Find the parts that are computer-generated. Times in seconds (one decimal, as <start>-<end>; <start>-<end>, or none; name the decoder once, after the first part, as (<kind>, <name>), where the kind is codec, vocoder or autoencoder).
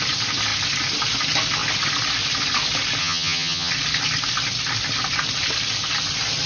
3.0-3.7 (vocoder, HiFi-GAN)